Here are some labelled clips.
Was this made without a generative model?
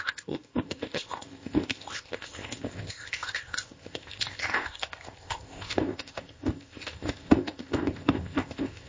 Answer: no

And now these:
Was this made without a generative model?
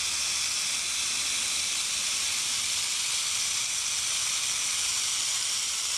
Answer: yes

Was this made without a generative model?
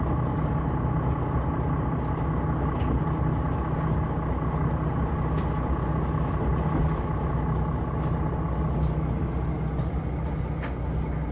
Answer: yes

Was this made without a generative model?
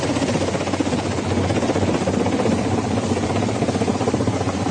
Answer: yes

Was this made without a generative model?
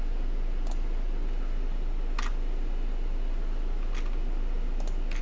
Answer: yes